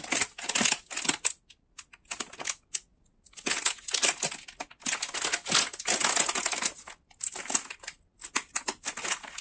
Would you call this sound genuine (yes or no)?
yes